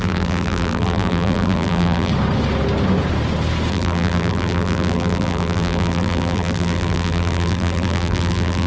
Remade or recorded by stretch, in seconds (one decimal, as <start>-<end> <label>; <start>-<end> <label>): 0.0-2.1 remade; 2.1-3.7 recorded; 3.7-8.7 remade